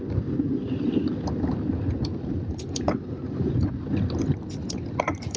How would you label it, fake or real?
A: real